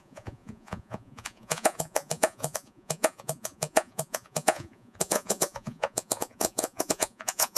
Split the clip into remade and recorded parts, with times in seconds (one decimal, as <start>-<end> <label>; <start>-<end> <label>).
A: 0.0-7.6 remade